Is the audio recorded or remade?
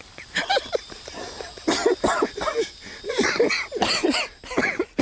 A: recorded